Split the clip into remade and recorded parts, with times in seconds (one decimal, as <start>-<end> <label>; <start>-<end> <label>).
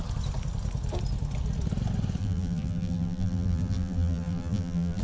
0.0-2.2 recorded; 2.2-5.0 remade